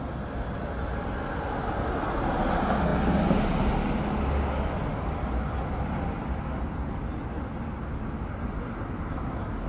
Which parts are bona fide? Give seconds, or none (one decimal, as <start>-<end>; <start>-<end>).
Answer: 0.0-9.7